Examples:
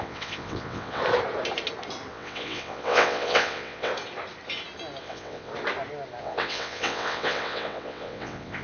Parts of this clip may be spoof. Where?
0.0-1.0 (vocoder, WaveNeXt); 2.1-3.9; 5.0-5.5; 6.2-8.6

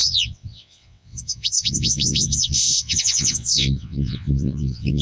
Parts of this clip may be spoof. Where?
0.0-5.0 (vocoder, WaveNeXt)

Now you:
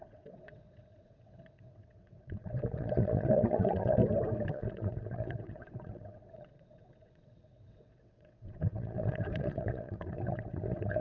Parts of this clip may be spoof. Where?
0.0-4.0 (vocoder, WaveNeXt); 4.5-11.0

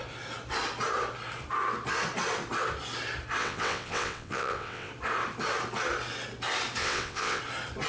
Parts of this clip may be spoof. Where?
3.4-4.9 (vocoder, WaveNeXt); 6.8-7.4

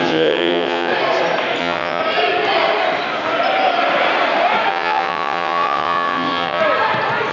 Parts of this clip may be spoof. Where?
0.0-0.9 (vocoder, WaveNeXt); 1.6-2.0; 4.7-6.6